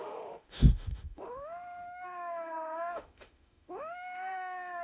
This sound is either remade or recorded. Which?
remade